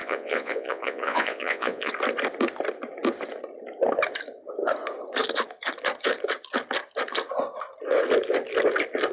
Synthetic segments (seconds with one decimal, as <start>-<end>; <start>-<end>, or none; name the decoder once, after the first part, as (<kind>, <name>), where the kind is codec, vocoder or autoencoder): 0.0-1.9 (vocoder, Vocos)